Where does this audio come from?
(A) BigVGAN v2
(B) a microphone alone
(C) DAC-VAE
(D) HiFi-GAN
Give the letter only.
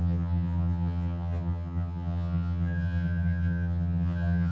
D